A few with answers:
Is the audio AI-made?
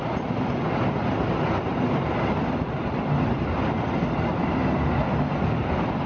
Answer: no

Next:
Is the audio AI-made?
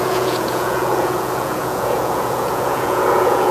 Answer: yes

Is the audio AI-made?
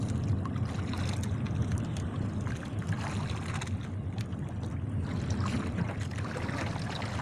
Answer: no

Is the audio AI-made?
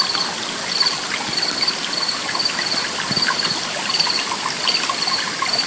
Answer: no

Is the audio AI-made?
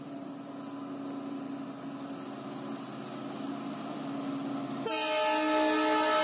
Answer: no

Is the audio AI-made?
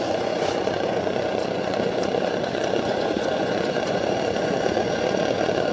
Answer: yes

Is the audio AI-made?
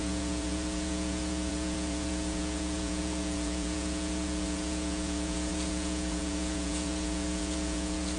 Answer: yes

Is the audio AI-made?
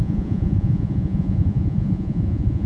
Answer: yes